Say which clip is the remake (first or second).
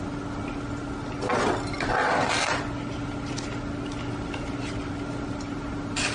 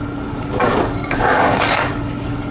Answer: second